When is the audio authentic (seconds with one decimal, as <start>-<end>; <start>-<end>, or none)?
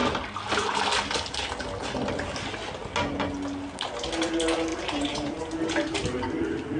0.0-4.7; 5.4-6.8